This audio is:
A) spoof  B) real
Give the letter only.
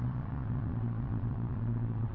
A